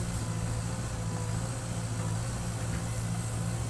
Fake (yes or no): no